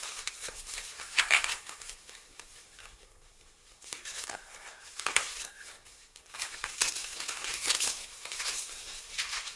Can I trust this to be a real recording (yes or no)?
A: no